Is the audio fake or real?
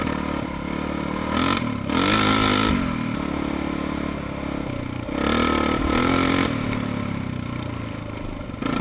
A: real